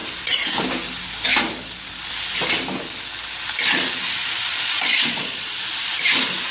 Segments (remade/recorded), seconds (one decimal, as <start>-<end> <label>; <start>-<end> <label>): 0.0-4.5 recorded; 4.5-5.5 remade; 5.5-6.5 recorded